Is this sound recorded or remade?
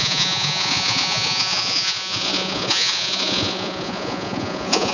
remade